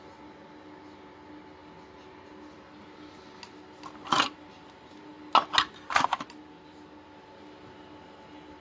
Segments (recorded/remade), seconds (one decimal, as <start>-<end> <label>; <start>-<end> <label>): 0.0-8.6 recorded